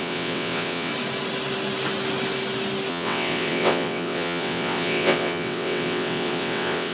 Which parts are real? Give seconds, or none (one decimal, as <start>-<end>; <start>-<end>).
0.9-2.9